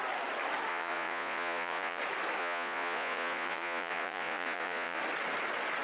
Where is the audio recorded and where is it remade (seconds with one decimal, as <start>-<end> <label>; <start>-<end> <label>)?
0.0-0.7 recorded; 0.7-2.0 remade; 2.0-2.4 recorded; 2.4-5.0 remade; 5.0-5.8 recorded